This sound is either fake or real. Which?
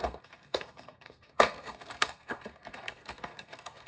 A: fake